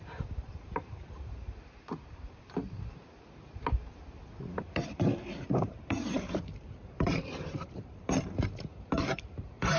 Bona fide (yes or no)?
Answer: no